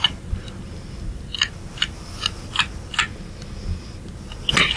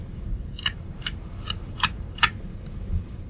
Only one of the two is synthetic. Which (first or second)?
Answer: second